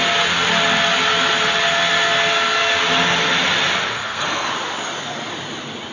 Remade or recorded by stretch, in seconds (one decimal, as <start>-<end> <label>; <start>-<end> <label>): 0.0-3.9 recorded; 3.9-4.5 remade; 4.5-5.9 recorded

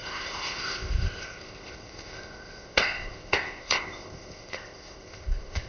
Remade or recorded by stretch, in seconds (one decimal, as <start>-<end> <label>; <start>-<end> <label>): 0.0-5.7 remade

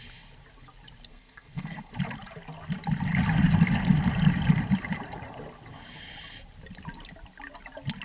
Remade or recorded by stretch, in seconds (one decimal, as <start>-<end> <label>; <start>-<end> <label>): 0.0-1.1 recorded; 1.1-1.9 remade; 1.9-8.0 recorded

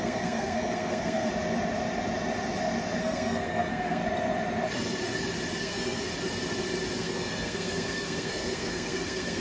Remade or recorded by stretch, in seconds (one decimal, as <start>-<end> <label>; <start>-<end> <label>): 0.0-1.3 remade; 1.3-3.0 recorded; 3.0-4.0 remade; 4.0-5.6 recorded; 5.6-6.1 remade; 6.1-7.0 recorded; 7.0-9.4 remade

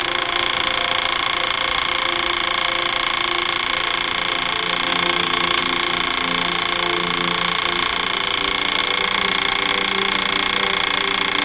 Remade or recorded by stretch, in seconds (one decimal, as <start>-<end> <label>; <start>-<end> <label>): 0.0-4.9 recorded; 4.9-5.6 remade; 5.6-11.4 recorded

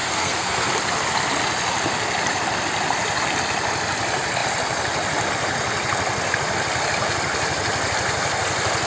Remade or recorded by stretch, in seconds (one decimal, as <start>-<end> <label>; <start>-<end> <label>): 0.0-0.7 remade; 0.7-8.9 recorded

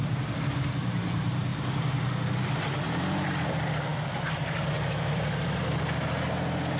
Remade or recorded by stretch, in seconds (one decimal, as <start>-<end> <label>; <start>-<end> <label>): 0.0-1.5 recorded; 1.5-2.1 remade; 2.1-3.9 recorded; 3.9-5.6 remade; 5.6-6.8 recorded